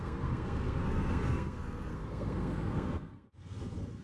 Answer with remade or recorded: remade